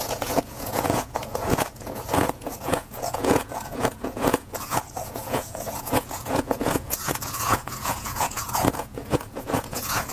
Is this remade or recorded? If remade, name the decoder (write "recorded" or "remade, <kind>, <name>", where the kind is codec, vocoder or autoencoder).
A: remade, vocoder, Vocos